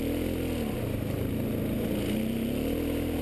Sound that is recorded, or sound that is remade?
recorded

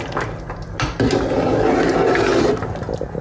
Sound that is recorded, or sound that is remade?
recorded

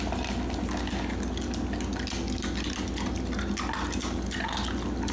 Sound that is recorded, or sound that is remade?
recorded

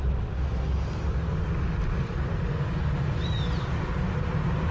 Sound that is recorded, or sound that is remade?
recorded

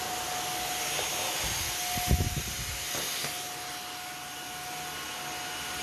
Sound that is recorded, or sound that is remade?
recorded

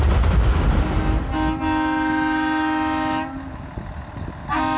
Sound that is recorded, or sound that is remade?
recorded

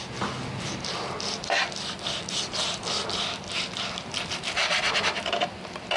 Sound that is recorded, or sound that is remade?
recorded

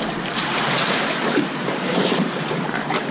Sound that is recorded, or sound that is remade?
remade